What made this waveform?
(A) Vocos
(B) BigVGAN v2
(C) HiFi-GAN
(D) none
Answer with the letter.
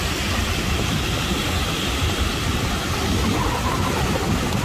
D